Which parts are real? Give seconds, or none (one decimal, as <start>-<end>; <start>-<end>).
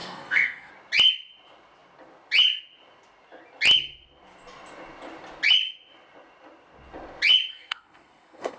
0.7-7.5